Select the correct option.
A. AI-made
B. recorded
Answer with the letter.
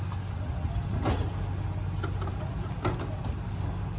B